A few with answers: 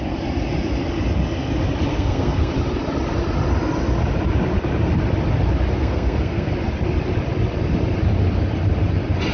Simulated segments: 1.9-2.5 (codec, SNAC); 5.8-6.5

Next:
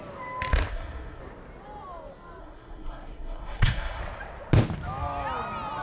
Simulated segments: 0.7-1.2 (codec, SNAC); 2.4-4.0

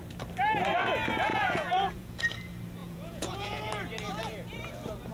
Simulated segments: 1.3-2.2 (vocoder, Vocos); 2.8-3.6

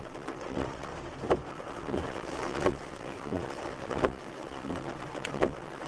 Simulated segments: 0.0-0.9 (vocoder, WaveNeXt); 1.5-5.9

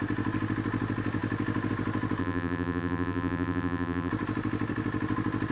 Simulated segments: 2.2-4.1 (vocoder, BigVGAN v2)